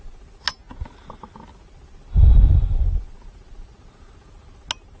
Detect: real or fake real